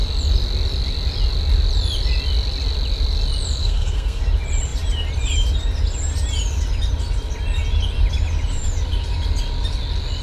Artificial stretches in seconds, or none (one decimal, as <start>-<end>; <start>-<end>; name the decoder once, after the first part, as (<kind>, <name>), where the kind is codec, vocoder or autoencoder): 3.6-4.2 (codec, SNAC)